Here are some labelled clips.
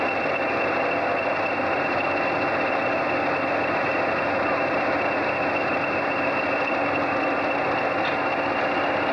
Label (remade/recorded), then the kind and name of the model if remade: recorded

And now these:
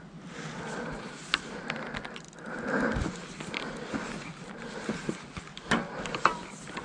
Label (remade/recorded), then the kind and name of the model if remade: recorded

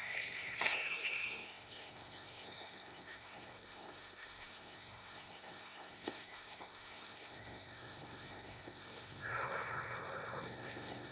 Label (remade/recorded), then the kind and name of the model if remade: remade, codec, SNAC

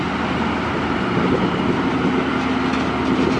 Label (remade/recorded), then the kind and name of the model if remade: recorded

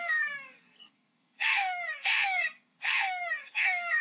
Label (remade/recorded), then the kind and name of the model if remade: remade, codec, SNAC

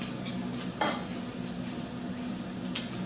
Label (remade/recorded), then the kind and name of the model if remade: recorded